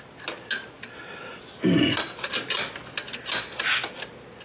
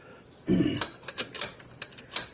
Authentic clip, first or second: first